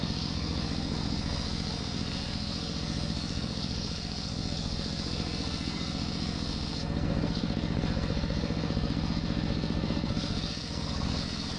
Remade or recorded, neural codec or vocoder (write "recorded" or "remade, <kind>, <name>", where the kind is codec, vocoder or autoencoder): remade, codec, SNAC